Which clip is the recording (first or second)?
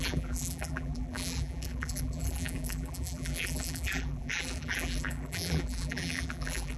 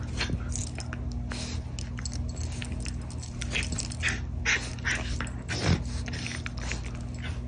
second